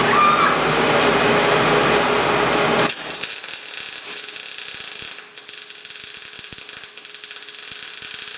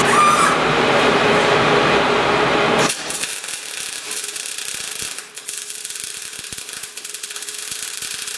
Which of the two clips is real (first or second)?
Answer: first